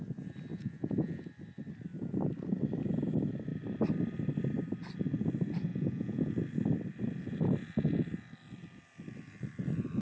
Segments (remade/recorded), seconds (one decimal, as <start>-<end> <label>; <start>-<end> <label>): 0.0-0.5 recorded; 0.5-1.2 remade; 1.2-5.7 recorded; 5.7-6.3 remade; 6.3-10.0 recorded